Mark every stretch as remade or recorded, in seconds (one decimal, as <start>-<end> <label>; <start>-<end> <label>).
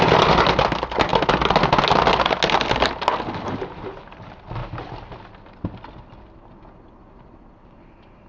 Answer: 0.0-8.3 recorded